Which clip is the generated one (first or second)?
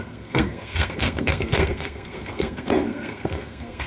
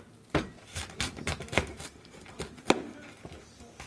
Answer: first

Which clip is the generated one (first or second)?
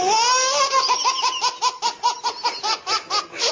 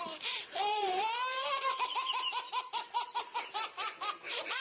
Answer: second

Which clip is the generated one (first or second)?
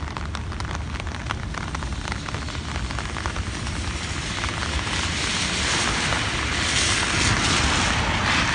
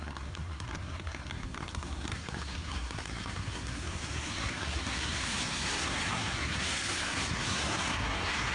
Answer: second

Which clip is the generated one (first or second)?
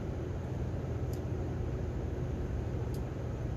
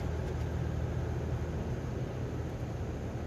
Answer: first